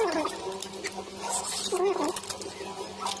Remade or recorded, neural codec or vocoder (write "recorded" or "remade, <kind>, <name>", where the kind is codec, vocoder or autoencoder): recorded